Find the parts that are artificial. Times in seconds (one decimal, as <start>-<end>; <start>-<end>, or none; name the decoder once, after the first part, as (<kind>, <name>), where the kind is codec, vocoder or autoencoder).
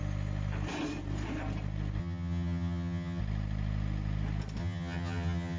2.0-3.2 (vocoder, HiFi-GAN); 4.6-5.6